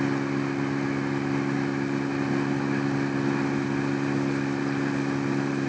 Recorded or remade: recorded